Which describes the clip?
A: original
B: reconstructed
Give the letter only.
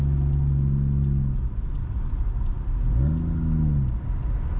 A